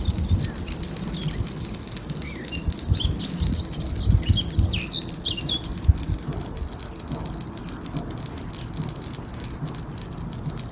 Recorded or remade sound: recorded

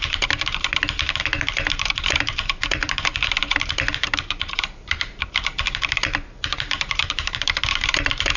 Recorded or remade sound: remade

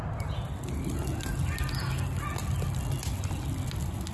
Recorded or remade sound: recorded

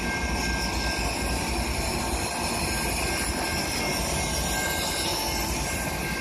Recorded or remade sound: recorded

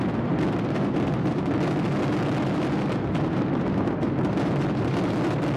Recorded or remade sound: recorded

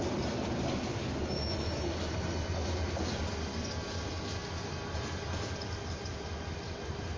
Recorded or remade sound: recorded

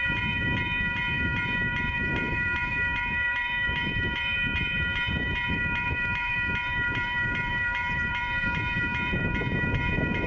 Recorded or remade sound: remade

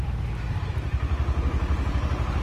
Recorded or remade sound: remade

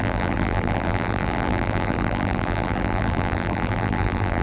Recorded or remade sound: remade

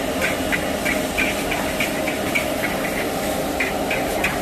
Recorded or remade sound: recorded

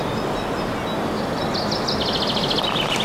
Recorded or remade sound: recorded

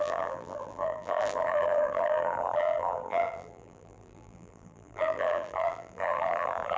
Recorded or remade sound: remade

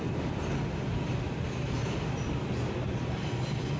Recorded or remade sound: recorded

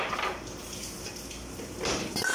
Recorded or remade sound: remade